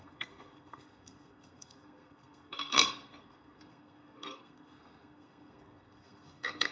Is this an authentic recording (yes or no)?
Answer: no